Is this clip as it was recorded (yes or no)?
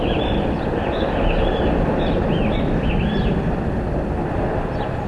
yes